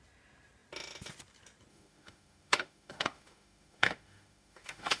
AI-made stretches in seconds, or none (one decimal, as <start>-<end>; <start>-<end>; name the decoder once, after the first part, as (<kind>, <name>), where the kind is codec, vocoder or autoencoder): 1.7-5.0 (autoencoder, DAC-VAE)